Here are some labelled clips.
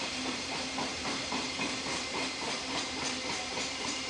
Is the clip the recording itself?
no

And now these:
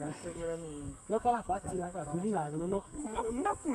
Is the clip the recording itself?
no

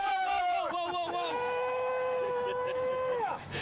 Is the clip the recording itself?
no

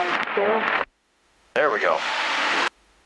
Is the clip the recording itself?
no